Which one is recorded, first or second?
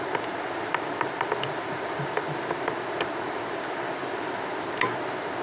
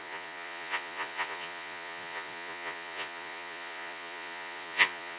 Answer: first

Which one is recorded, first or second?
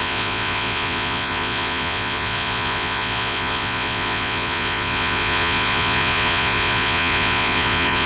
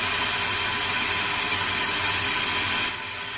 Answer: second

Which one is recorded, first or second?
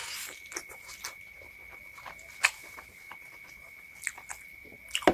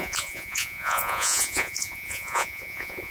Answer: first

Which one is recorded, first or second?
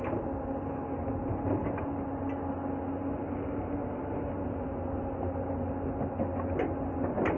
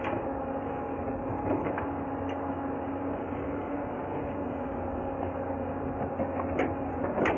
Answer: first